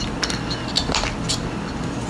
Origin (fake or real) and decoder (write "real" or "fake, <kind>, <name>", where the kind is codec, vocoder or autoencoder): real